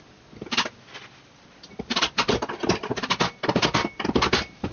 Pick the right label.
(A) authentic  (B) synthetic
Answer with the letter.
A